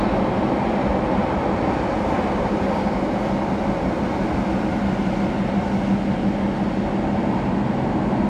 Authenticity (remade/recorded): recorded